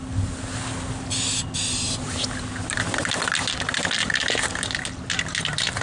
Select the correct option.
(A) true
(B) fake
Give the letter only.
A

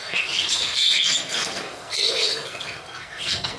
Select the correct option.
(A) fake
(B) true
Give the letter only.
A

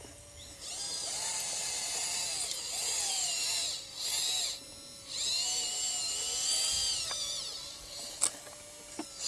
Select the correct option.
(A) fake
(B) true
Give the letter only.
B